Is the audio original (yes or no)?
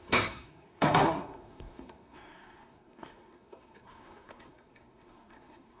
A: no